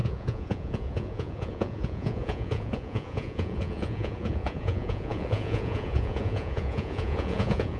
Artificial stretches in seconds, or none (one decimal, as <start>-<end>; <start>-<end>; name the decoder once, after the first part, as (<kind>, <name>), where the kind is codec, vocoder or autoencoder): 0.0-7.8 (vocoder, Vocos)